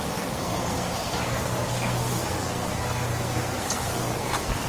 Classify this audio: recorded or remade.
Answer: remade